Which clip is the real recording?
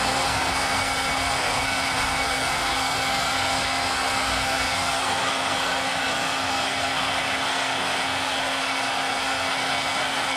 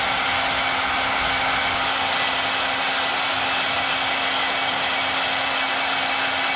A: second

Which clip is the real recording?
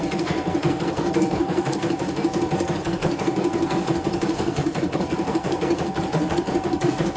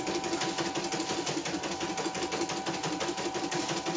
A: second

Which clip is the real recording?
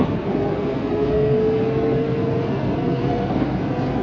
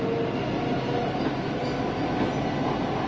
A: second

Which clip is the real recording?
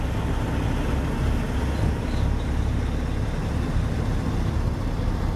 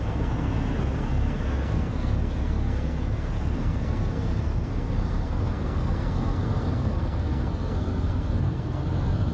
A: first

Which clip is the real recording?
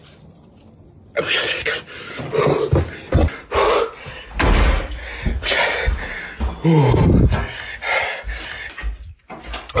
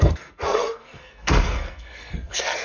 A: first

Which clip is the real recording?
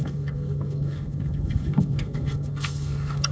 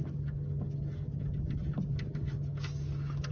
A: second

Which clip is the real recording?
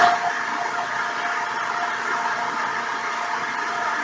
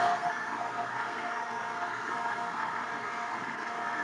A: first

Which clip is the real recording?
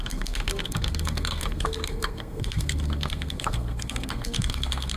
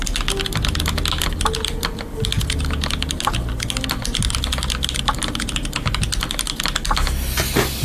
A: second